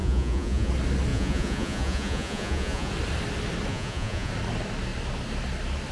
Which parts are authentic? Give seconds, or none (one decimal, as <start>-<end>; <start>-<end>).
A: 0.7-1.1; 2.9-3.7; 4.3-5.9